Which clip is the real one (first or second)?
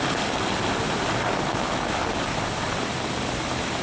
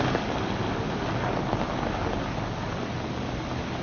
second